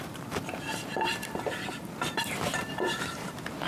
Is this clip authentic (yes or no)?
no